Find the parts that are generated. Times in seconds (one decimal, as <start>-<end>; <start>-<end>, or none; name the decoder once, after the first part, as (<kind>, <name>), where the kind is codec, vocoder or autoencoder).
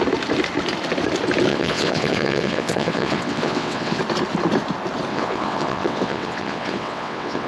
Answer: 1.5-4.0 (vocoder, WaveNeXt); 5.1-7.5